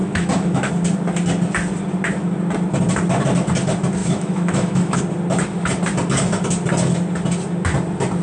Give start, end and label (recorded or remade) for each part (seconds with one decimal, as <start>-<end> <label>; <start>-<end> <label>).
0.0-0.7 remade; 0.7-4.0 recorded; 4.0-5.0 remade; 5.0-8.2 recorded